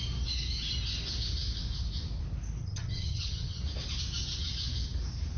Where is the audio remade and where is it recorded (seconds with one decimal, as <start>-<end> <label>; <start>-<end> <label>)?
0.0-2.6 recorded; 2.6-3.6 remade; 3.6-5.4 recorded